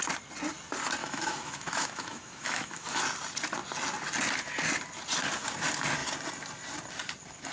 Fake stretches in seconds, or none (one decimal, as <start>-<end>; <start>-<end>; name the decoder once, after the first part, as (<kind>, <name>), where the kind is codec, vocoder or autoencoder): 1.0-3.0 (autoencoder, DAC-VAE)